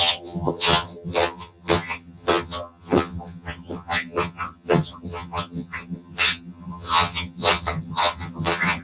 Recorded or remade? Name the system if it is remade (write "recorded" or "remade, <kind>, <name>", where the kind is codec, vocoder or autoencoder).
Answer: remade, vocoder, HiFi-GAN